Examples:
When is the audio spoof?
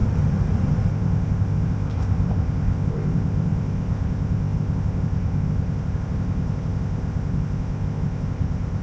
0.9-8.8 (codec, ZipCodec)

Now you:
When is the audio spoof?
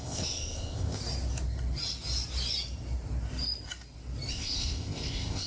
0.0-1.0 (codec, ZipCodec); 4.3-5.5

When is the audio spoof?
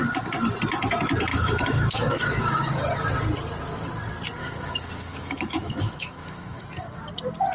1.3-2.7 (autoencoder, DAC-VAE); 4.4-6.6